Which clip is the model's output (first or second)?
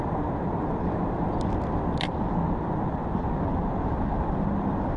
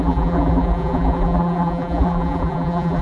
second